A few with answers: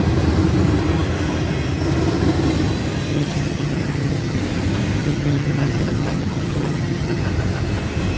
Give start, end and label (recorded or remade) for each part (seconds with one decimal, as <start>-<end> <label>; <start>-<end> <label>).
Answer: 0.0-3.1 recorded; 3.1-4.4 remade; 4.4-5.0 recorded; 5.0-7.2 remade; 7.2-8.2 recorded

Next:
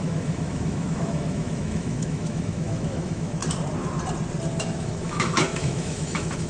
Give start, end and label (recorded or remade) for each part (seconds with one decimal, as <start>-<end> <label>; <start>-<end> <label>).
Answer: 0.0-3.4 remade; 3.4-4.6 recorded; 4.6-6.5 remade

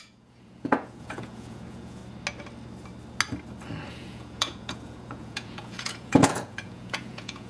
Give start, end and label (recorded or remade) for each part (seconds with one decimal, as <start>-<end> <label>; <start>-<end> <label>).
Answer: 0.0-2.0 remade; 2.0-3.9 recorded; 3.9-7.5 remade